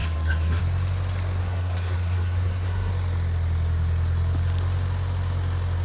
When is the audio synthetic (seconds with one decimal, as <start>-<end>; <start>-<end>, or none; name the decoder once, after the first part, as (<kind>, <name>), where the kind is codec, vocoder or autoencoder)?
0.0-0.6 (codec, SNAC); 1.4-2.9